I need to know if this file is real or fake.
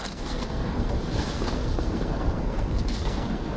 fake